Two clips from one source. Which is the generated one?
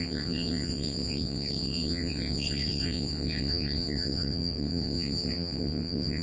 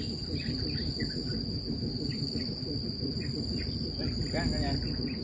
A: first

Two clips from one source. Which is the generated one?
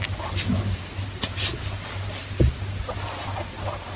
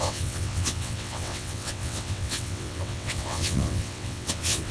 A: second